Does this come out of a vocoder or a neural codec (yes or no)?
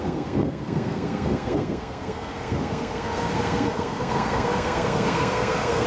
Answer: yes